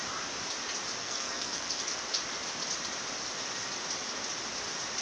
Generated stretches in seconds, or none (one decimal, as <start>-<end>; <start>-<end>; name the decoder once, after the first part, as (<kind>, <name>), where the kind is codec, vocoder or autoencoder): 1.0-2.0 (codec, SNAC)